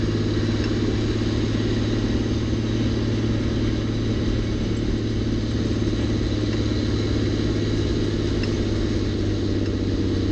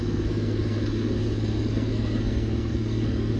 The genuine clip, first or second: first